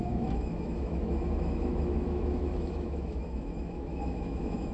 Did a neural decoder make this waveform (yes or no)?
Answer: yes